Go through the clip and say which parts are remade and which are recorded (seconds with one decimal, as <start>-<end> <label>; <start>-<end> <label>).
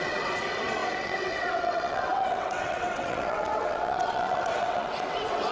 0.0-5.5 remade